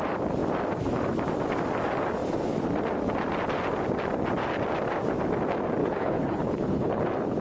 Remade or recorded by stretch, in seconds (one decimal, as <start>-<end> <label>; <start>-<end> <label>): 0.0-5.8 recorded; 5.8-7.0 remade; 7.0-7.4 recorded